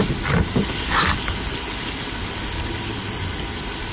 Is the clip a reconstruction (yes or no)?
no